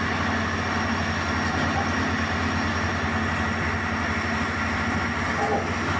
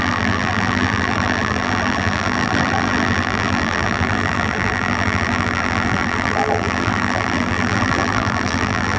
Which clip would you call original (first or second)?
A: first